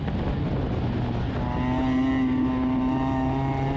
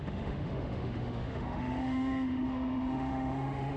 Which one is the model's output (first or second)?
second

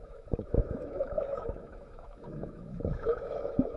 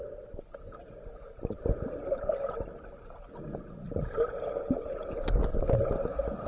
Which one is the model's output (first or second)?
first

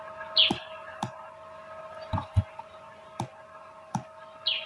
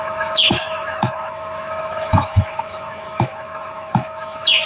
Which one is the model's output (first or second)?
second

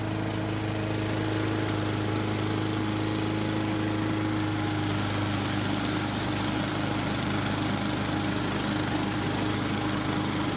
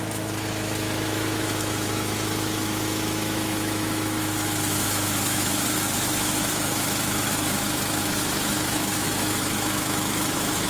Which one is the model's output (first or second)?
second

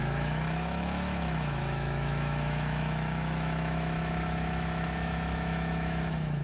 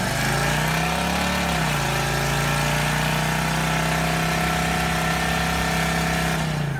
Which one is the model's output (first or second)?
first